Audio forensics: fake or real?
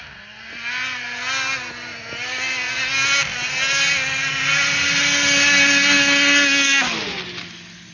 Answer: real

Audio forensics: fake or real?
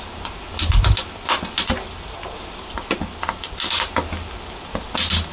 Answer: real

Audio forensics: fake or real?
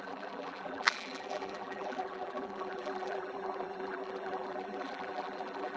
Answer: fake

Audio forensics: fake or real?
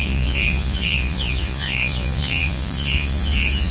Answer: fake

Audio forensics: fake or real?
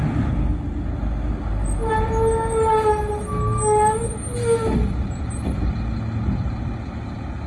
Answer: real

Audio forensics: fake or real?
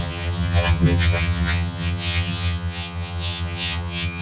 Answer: fake